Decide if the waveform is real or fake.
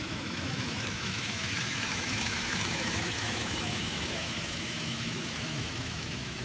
fake